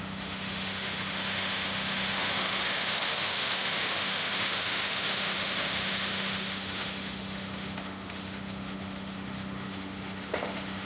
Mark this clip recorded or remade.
remade